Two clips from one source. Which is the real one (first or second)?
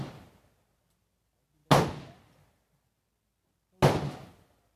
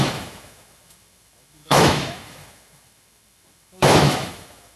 first